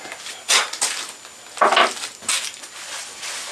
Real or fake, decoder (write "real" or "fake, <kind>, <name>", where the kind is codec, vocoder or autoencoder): real